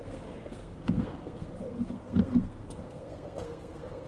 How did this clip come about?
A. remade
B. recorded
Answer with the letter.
A